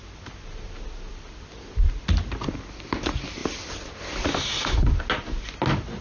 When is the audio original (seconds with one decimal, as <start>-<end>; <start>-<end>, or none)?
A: 0.0-6.0